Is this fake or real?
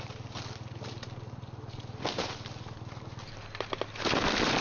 real